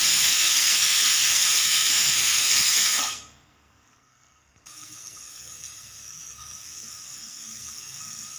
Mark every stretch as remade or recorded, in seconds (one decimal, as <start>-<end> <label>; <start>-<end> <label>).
0.0-8.4 remade